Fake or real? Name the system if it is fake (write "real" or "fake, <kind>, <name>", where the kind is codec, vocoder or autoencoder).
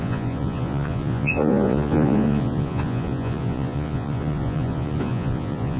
fake, vocoder, Vocos